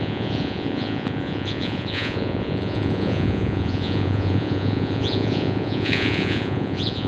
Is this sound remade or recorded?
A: remade